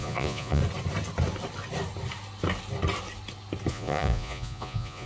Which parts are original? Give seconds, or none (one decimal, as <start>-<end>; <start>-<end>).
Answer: 0.6-3.7